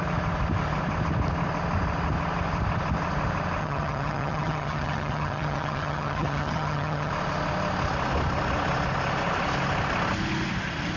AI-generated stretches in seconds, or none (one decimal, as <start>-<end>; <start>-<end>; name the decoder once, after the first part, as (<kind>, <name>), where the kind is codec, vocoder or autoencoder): 3.6-7.1 (vocoder, HiFi-GAN)